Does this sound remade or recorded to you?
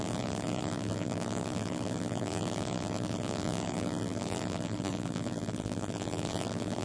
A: remade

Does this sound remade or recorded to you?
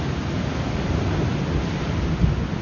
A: recorded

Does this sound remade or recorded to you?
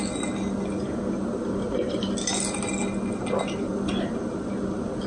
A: recorded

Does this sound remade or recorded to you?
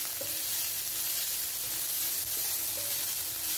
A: recorded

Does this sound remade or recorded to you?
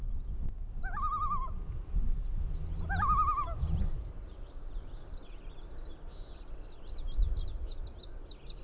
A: recorded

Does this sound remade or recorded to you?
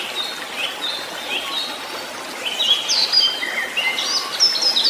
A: recorded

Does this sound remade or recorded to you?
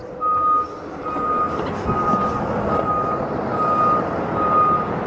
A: recorded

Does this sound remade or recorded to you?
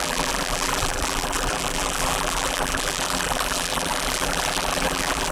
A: remade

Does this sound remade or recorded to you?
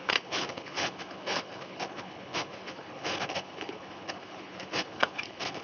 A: remade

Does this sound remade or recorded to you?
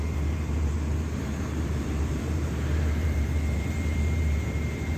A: remade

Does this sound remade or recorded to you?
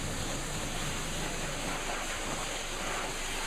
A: recorded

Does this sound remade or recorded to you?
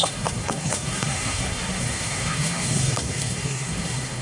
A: remade